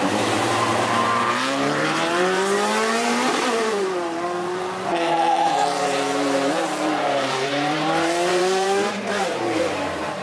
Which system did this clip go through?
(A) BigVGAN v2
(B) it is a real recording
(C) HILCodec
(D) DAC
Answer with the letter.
A